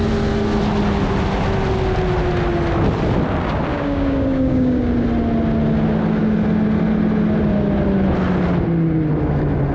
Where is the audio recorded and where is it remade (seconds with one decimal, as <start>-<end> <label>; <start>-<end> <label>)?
0.0-3.7 recorded; 3.7-4.9 remade; 4.9-9.7 recorded